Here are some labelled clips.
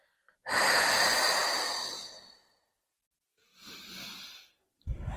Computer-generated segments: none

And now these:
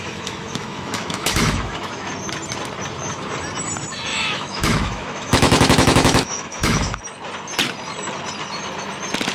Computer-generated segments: 0.0-2.1; 4.1-7.0

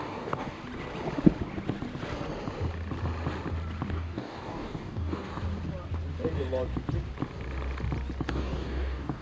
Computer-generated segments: 0.0-0.6; 3.9-5.3; 8.3-9.2

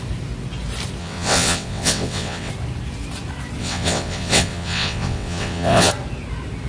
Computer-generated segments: 1.0-2.5; 3.6-5.9

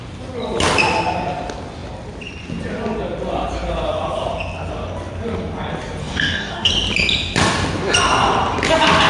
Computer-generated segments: 6.0-6.7

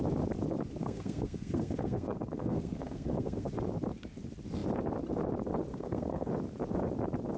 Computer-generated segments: 0.8-3.5; 5.7-6.3

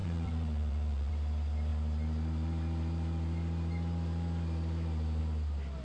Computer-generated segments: 0.0-1.1